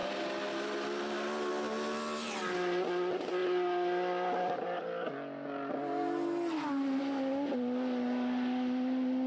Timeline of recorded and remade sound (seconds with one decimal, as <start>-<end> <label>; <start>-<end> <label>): 0.0-9.3 recorded